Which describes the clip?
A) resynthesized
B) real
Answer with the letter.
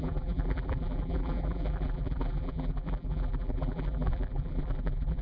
A